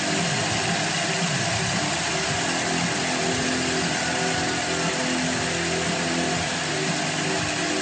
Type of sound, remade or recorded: recorded